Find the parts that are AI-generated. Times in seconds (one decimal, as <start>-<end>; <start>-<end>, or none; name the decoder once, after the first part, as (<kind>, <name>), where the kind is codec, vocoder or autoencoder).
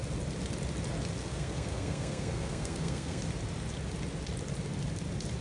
1.2-3.2 (codec, SNAC)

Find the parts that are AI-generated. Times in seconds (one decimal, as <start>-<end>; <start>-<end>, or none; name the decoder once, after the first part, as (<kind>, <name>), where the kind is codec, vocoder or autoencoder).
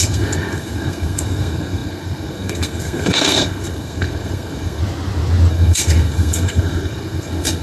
0.0-4.8 (codec, SNAC); 5.5-7.6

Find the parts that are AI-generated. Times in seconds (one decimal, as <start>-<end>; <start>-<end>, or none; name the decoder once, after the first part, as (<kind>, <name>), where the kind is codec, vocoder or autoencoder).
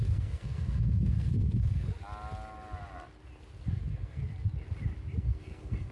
0.0-1.9 (codec, SNAC); 3.7-4.2; 5.2-5.9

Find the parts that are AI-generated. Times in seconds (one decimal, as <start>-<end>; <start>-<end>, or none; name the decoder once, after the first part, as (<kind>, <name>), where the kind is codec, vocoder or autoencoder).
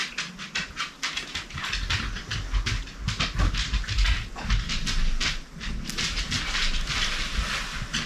none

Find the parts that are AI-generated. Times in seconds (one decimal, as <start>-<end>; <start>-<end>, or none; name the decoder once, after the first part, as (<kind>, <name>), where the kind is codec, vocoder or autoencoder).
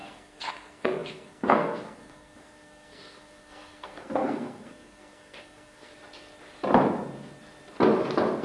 0.0-5.9 (codec, SNAC)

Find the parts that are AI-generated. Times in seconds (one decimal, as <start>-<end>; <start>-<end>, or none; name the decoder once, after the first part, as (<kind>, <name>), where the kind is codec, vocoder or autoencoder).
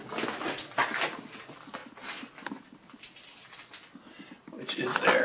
none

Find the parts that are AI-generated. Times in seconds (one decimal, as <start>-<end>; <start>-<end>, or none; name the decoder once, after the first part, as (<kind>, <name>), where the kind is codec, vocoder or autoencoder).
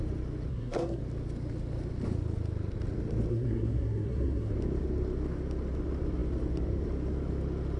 0.5-1.0 (codec, SNAC); 3.3-4.5